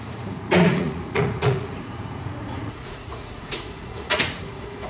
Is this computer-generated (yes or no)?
yes